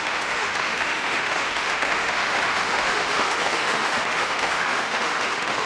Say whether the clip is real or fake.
fake